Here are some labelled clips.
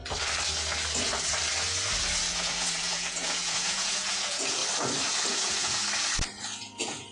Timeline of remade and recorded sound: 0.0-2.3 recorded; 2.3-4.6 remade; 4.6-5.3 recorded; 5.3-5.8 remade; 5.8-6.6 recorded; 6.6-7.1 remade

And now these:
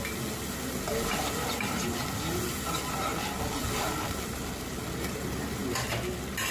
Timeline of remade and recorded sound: 0.0-6.5 recorded